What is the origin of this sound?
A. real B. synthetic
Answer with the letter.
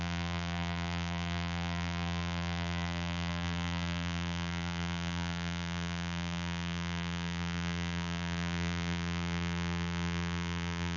B